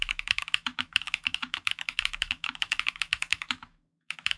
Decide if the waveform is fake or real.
fake